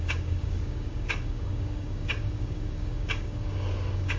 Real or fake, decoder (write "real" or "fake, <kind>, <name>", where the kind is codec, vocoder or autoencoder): fake, codec, DAC